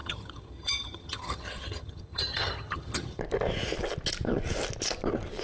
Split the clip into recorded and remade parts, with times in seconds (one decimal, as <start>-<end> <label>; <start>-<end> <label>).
0.0-3.2 remade; 3.2-5.4 recorded